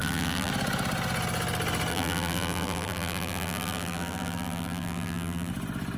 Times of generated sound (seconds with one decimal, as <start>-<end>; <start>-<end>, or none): 0.0-0.5; 1.9-5.5